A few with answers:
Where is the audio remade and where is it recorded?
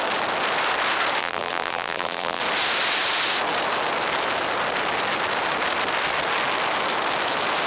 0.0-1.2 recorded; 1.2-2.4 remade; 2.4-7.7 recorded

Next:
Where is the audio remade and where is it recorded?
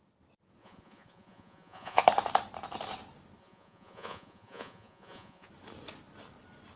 0.0-0.6 recorded; 0.6-2.0 remade; 2.0-3.4 recorded; 3.4-5.5 remade; 5.5-6.8 recorded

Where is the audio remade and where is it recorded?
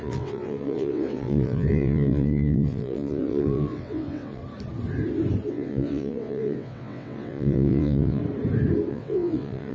0.0-4.4 remade; 4.4-5.5 recorded; 5.5-8.2 remade; 8.2-8.9 recorded; 8.9-9.7 remade